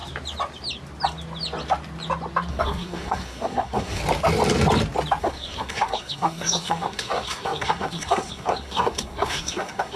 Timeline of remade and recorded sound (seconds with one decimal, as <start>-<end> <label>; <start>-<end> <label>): 0.0-2.5 recorded; 2.5-4.0 remade; 4.0-5.2 recorded; 5.2-10.0 remade